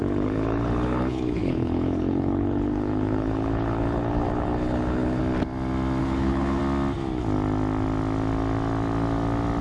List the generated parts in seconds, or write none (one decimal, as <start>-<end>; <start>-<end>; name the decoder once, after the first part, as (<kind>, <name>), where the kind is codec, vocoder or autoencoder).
0.0-5.2 (codec, HILCodec); 6.0-6.6